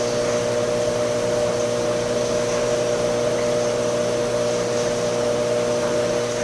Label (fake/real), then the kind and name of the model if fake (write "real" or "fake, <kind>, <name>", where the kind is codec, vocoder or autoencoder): real